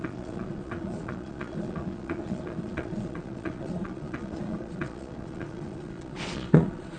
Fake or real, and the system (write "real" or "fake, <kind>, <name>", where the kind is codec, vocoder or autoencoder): fake, vocoder, Vocos